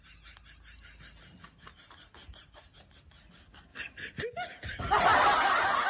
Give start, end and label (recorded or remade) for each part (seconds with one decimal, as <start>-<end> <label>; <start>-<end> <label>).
0.0-3.7 recorded; 3.7-4.8 remade; 4.8-5.9 recorded